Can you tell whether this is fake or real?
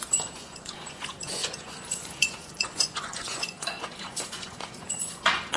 fake